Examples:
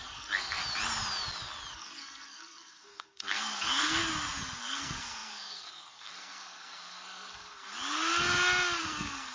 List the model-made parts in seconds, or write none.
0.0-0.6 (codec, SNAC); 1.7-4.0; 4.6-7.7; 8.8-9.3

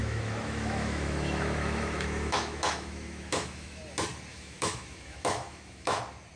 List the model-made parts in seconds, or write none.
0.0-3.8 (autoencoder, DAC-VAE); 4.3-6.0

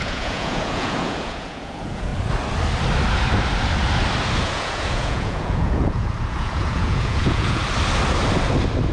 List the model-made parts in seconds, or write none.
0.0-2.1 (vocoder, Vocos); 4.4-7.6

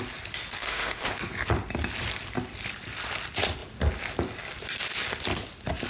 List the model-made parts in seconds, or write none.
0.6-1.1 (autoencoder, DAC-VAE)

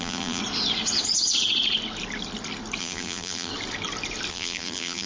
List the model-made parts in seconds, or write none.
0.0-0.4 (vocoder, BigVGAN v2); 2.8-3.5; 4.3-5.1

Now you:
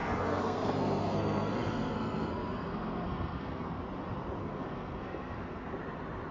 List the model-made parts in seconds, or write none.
0.0-3.8 (codec, SNAC); 4.4-5.7

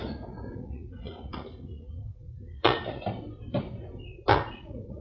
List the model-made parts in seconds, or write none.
0.0-3.0 (vocoder, Vocos); 4.3-5.0

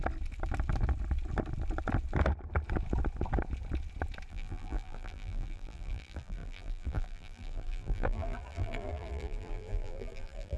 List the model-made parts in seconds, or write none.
4.3-10.6 (vocoder, BigVGAN v2)